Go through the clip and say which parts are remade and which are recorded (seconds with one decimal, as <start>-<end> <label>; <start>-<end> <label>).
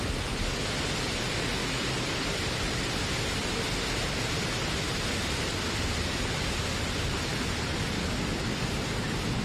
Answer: 0.0-9.4 recorded